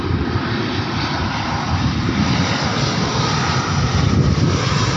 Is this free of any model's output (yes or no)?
no